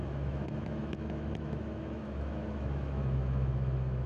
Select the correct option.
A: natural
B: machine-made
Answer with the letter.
B